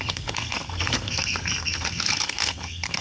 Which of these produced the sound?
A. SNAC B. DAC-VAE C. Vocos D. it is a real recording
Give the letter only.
A